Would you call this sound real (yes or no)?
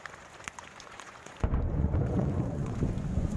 no